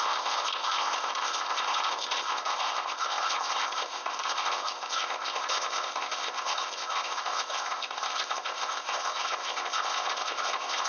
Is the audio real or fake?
fake